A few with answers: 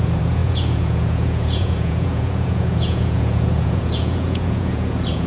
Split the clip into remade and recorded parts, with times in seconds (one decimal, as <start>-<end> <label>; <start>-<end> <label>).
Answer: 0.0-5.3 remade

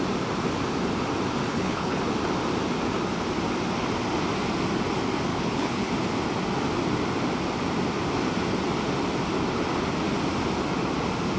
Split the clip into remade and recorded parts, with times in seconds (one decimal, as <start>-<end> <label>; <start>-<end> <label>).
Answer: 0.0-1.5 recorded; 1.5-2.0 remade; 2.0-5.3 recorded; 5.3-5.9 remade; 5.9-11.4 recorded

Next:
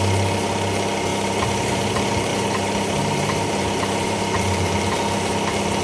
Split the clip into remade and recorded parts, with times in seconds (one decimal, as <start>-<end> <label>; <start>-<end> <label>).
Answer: 0.0-1.1 recorded; 1.1-1.9 remade; 1.9-2.3 recorded; 2.3-4.2 remade; 4.2-5.8 recorded

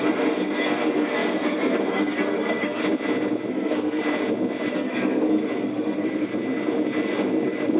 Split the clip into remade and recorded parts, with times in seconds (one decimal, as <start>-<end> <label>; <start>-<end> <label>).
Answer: 0.0-2.8 remade; 2.8-3.5 recorded; 3.5-4.0 remade; 4.0-4.7 recorded; 4.7-6.3 remade; 6.3-7.8 recorded

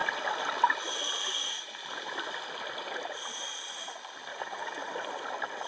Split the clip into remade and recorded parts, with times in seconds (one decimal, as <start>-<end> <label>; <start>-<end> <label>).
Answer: 0.0-4.3 recorded; 4.3-4.9 remade; 4.9-5.7 recorded

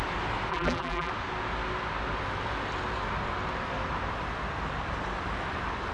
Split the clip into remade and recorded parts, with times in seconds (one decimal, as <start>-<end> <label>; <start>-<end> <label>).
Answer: 0.0-0.5 recorded; 0.5-1.1 remade; 1.1-5.9 recorded